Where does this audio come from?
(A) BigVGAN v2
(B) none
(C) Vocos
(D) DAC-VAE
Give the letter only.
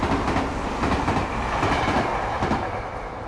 B